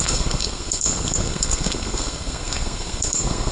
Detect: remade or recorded remade